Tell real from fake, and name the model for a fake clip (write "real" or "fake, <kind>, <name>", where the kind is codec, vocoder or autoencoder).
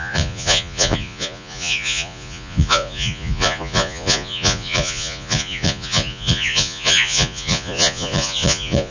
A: fake, vocoder, Vocos